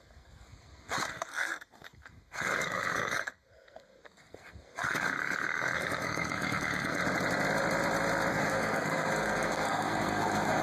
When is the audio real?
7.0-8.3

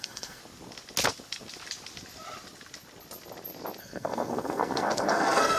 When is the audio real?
0.4-3.8

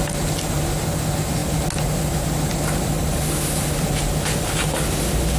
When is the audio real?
0.0-5.4

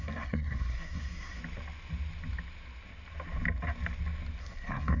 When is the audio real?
1.4-4.4

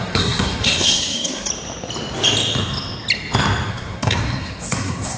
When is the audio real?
1.5-3.7

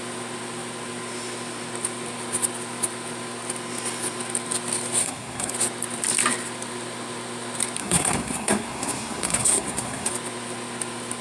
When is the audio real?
0.0-5.0; 5.5-7.8; 10.1-11.2